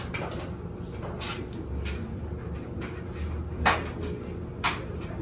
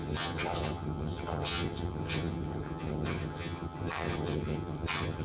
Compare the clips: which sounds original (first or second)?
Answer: first